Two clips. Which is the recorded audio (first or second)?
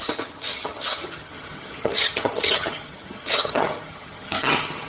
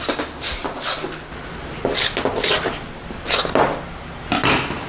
second